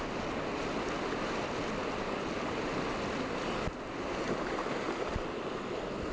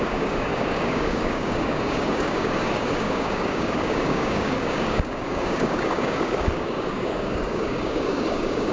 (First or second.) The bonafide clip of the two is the first